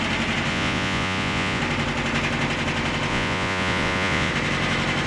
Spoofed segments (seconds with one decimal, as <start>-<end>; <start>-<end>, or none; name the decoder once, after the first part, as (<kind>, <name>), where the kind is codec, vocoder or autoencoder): 0.5-1.6 (vocoder, Vocos); 3.1-4.3